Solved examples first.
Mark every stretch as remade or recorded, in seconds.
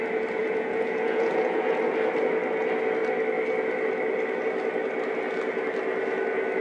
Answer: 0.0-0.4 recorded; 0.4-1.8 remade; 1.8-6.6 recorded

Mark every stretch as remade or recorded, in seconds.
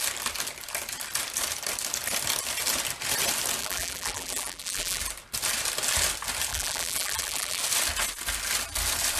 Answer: 0.0-3.6 recorded; 3.6-5.0 remade; 5.0-6.5 recorded; 6.5-7.6 remade; 7.6-9.2 recorded